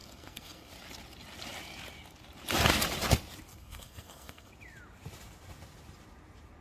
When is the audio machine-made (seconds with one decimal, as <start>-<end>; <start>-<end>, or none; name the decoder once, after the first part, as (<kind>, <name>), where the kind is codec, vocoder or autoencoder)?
0.0-0.7 (codec, SNAC); 3.5-4.5